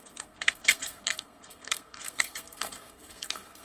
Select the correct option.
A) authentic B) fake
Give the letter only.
B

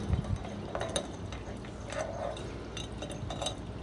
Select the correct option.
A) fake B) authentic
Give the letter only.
B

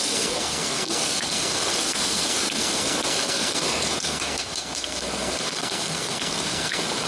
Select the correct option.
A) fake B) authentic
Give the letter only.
A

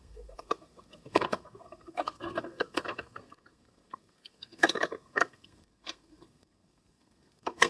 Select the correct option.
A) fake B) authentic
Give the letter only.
A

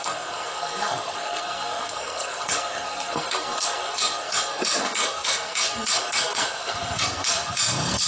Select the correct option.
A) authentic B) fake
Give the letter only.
B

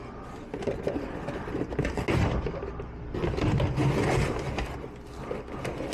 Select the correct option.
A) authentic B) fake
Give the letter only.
A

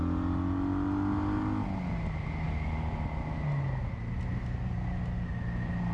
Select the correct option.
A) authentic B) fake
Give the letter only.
A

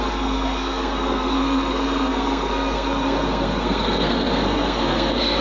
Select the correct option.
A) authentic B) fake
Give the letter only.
B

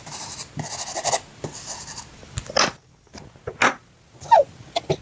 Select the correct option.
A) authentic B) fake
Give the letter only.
A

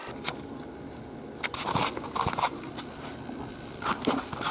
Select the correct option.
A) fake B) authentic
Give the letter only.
B